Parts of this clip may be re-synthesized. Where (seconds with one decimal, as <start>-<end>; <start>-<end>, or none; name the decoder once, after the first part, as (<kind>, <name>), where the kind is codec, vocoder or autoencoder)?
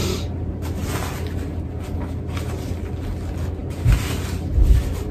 none